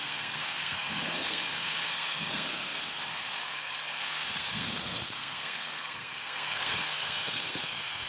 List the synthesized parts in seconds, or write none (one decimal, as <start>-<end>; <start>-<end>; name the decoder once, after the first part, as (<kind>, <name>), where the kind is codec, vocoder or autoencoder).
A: 0.0-8.1 (codec, SNAC)